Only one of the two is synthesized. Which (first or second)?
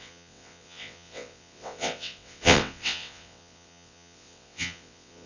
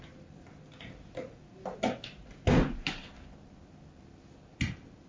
first